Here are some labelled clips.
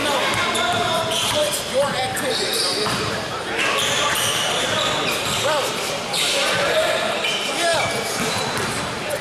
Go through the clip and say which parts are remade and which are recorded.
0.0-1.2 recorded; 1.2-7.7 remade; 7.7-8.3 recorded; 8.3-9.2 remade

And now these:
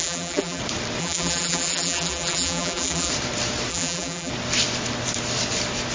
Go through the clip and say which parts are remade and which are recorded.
0.0-0.6 remade; 0.6-1.0 recorded; 1.0-3.1 remade; 3.1-3.7 recorded; 3.7-4.3 remade; 4.3-5.9 recorded

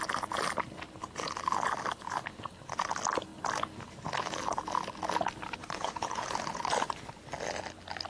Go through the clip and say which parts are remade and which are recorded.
0.0-5.6 recorded; 5.6-6.3 remade; 6.3-8.1 recorded

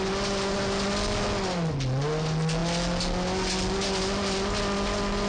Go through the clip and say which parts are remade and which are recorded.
0.0-5.3 recorded

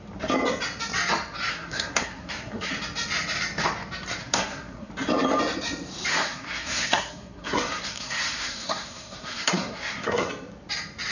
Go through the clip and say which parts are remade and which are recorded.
0.0-1.5 recorded; 1.5-2.7 remade; 2.7-4.2 recorded; 4.2-4.9 remade; 4.9-6.1 recorded; 6.1-10.3 remade; 10.3-11.1 recorded

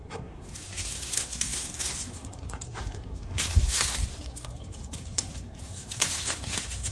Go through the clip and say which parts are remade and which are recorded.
0.0-6.9 remade

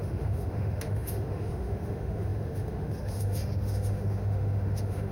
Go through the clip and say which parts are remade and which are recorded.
0.0-5.1 remade